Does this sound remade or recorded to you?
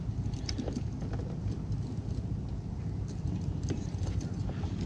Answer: recorded